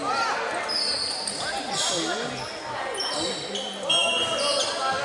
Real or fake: real